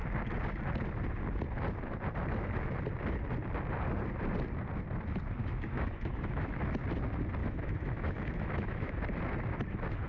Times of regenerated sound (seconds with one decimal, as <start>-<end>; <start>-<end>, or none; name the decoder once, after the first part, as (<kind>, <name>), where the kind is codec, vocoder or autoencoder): 5.4-6.6 (autoencoder, DAC-VAE); 7.4-8.9